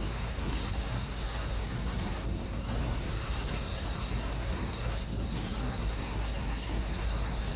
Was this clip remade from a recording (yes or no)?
yes